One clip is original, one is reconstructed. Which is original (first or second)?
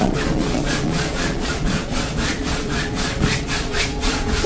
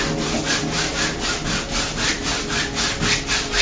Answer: second